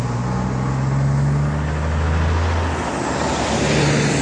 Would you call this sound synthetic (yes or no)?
no